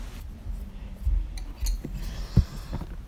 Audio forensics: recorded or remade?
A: recorded